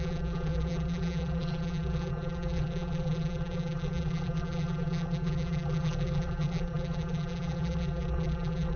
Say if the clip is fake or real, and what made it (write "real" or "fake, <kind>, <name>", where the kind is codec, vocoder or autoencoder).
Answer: fake, vocoder, BigVGAN v2